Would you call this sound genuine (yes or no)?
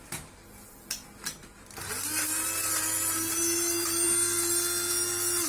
yes